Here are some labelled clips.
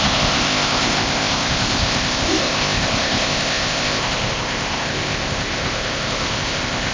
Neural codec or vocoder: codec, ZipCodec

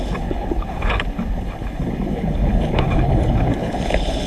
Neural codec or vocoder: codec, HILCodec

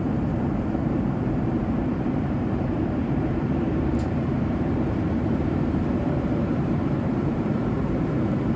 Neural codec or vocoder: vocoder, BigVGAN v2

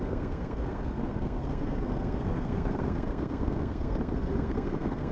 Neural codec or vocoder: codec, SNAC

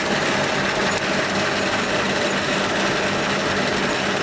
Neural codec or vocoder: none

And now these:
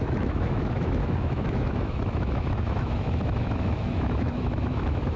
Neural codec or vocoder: autoencoder, DAC-VAE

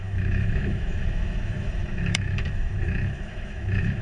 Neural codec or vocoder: autoencoder, DAC-VAE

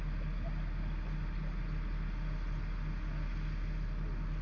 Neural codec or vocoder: none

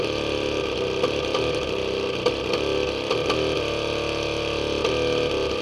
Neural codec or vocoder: none